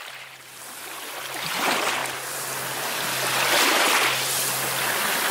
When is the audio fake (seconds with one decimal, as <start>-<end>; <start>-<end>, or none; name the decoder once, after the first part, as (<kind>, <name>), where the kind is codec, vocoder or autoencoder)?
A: 0.0-0.6 (vocoder, BigVGAN v2); 1.5-2.0